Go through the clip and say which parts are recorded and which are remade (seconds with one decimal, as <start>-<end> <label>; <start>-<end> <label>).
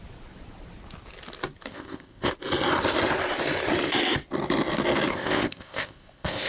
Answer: 0.0-1.7 recorded; 1.7-2.3 remade; 2.3-5.1 recorded; 5.1-6.5 remade